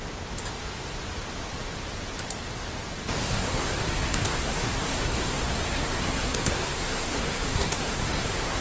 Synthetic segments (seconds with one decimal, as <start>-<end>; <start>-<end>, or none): 3.2-8.6